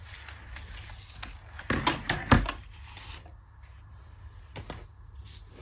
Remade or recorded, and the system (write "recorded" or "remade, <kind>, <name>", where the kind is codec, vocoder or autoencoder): recorded